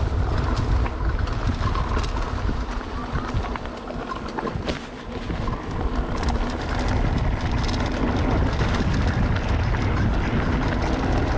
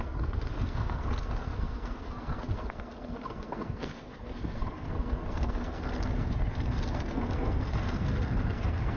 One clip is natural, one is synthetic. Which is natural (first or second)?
first